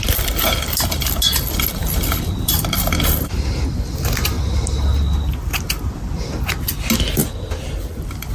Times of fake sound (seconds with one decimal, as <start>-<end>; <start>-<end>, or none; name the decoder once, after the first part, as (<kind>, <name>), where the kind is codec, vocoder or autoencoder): 1.8-3.3 (vocoder, BigVGAN v2); 7.2-8.3